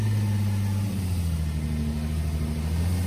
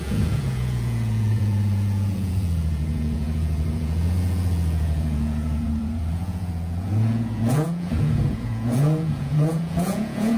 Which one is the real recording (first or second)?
first